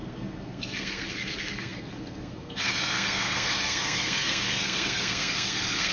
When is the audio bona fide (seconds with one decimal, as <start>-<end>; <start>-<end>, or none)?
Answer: none